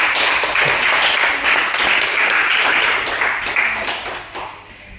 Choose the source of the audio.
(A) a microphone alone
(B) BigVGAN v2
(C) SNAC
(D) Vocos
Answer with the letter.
A